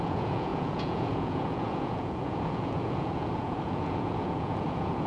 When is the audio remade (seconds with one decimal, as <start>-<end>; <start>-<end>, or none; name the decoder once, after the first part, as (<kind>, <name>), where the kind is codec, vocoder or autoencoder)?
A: 0.0-5.1 (vocoder, Vocos)